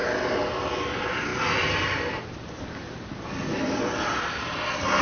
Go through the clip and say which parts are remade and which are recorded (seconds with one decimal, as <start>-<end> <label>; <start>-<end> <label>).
0.0-5.0 recorded